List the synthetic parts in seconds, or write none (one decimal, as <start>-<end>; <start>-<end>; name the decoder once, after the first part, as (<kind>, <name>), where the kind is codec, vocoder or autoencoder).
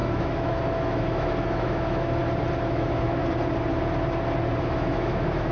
0.0-2.2 (autoencoder, DAC-VAE); 2.7-3.2; 4.6-5.5